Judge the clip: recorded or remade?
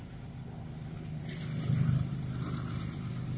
remade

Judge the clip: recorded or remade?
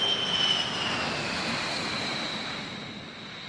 recorded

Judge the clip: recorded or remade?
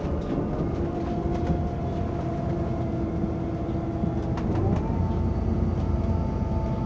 recorded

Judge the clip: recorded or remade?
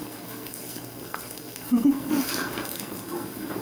remade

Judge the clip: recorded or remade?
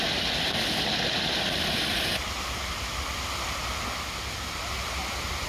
recorded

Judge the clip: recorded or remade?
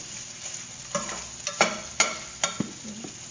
recorded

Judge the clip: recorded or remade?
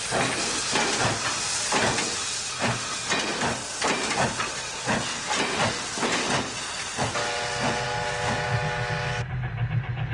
recorded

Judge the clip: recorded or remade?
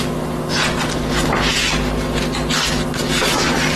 recorded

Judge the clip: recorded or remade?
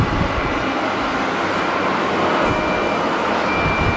recorded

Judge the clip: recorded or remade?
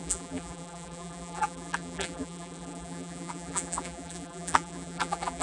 remade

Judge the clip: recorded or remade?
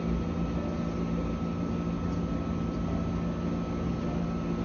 recorded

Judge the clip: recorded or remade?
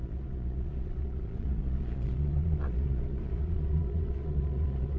remade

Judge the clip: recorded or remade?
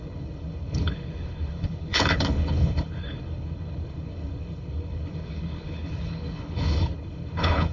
remade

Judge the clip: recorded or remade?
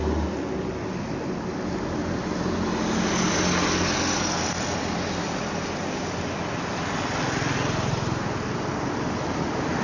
recorded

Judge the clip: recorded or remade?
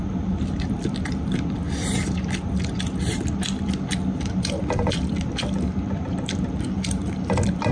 remade